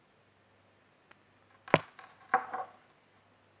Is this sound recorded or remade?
recorded